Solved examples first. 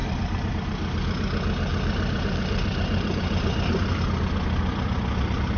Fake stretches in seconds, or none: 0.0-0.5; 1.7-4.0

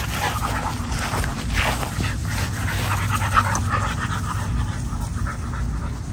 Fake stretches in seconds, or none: none

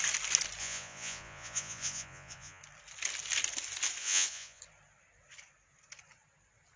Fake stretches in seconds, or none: 0.6-2.6; 4.0-4.6

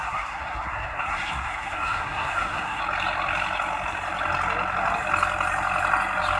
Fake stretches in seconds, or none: 0.0-2.8

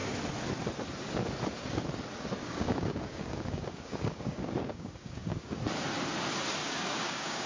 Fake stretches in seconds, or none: 2.4-5.6; 6.6-7.5

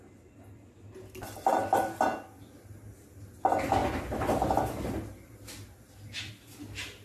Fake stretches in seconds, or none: none

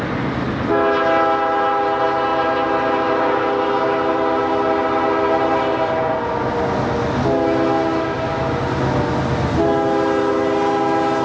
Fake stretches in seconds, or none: none